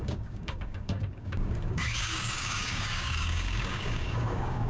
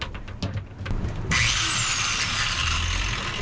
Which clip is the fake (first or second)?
first